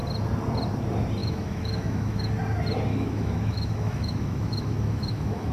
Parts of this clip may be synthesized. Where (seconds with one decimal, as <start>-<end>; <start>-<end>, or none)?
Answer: 1.2-2.3; 2.9-5.5